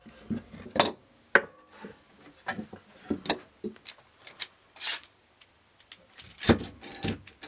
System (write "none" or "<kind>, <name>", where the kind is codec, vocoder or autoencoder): none